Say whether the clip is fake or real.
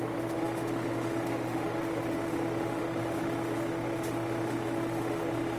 fake